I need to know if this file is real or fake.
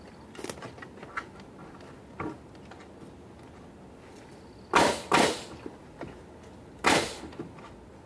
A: real